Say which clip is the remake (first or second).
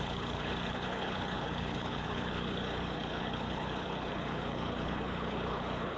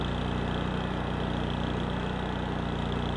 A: first